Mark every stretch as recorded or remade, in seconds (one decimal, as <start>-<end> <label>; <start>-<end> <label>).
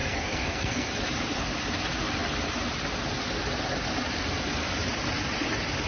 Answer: 0.0-0.9 remade; 0.9-5.9 recorded